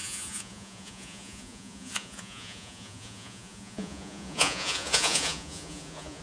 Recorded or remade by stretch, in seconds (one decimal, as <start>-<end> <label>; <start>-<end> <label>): 0.0-6.2 remade

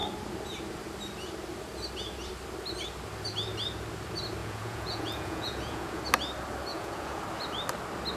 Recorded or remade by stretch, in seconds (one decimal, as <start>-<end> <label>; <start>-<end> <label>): 0.0-4.4 recorded; 4.4-6.0 remade; 6.0-6.7 recorded; 6.7-7.2 remade; 7.2-8.2 recorded

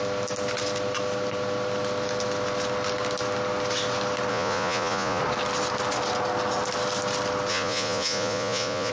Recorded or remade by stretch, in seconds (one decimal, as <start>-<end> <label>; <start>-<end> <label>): 0.0-4.3 recorded; 4.3-5.2 remade; 5.2-7.5 recorded; 7.5-8.9 remade

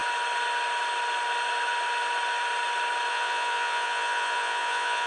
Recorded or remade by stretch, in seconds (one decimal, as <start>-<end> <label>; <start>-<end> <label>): 0.0-3.1 recorded; 3.1-5.1 remade